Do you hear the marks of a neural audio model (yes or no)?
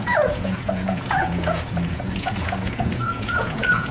yes